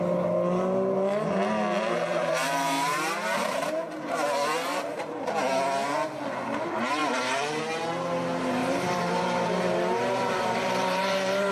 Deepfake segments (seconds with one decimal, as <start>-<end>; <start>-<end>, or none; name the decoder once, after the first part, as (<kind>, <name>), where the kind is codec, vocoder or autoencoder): 2.1-5.3 (vocoder, BigVGAN v2); 7.0-7.6; 8.6-11.5

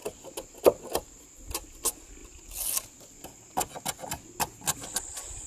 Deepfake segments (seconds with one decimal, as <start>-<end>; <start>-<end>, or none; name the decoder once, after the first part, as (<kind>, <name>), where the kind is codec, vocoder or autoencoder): none

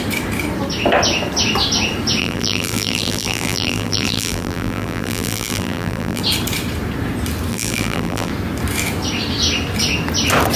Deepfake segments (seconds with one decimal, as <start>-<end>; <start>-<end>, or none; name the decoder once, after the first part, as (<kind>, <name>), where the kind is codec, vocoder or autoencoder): 2.2-6.2 (vocoder, BigVGAN v2); 7.5-8.3

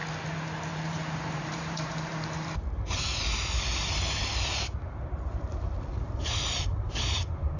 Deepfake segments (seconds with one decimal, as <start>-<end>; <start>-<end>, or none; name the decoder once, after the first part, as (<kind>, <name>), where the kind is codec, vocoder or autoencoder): 0.7-2.1 (vocoder, BigVGAN v2); 6.6-7.6